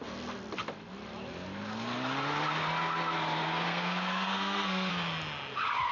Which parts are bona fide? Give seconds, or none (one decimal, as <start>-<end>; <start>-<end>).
0.0-3.4; 4.9-5.9